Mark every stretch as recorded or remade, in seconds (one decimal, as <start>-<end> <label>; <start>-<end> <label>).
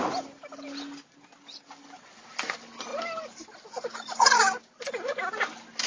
0.0-2.9 recorded; 2.9-5.2 remade; 5.2-5.9 recorded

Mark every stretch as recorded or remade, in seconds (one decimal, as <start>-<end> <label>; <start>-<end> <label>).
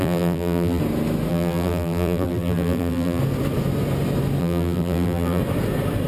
0.0-0.8 remade; 0.8-1.3 recorded; 1.3-3.2 remade; 3.2-4.4 recorded; 4.4-5.4 remade; 5.4-6.1 recorded